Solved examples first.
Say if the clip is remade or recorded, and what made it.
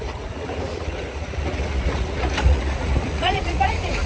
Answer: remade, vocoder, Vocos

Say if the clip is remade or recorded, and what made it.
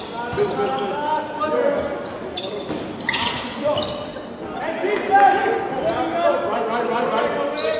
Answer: recorded